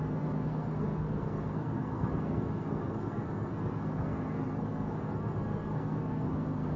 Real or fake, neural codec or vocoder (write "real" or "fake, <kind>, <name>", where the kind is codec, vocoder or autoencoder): fake, codec, SNAC